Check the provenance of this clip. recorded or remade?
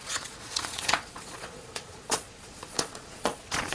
remade